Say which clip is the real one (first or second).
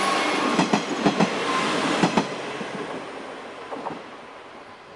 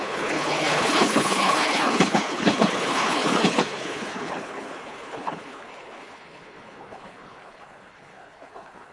first